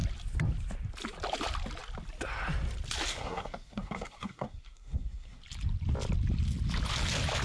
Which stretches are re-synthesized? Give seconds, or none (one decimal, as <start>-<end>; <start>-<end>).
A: 3.1-5.4